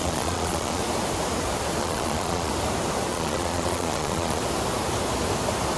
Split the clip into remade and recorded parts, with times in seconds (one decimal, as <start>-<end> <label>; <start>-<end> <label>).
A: 0.0-0.8 remade; 0.8-1.8 recorded; 1.8-2.5 remade; 2.5-3.1 recorded; 3.1-4.4 remade; 4.4-5.8 recorded